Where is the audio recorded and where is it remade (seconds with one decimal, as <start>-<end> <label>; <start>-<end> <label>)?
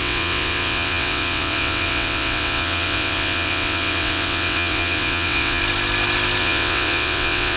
0.0-5.6 remade; 5.6-6.4 recorded; 6.4-7.6 remade